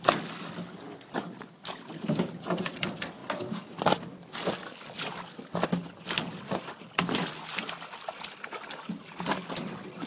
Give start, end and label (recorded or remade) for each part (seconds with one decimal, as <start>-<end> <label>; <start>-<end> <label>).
0.0-10.1 recorded